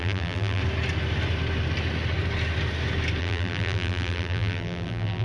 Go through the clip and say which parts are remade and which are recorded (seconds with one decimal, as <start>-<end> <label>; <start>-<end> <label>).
0.0-0.6 remade; 0.6-3.2 recorded; 3.2-5.2 remade